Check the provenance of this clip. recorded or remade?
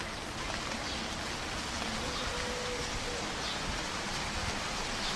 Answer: recorded